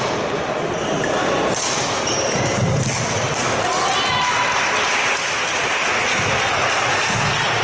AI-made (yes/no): no